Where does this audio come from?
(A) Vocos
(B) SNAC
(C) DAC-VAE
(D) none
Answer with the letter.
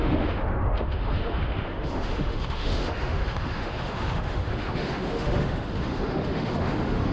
C